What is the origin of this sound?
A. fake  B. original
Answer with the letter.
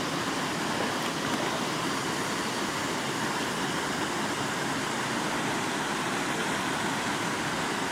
B